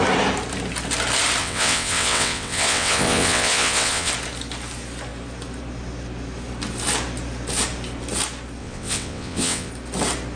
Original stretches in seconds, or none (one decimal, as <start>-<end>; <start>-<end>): 0.0-1.4; 4.1-8.6; 9.7-10.4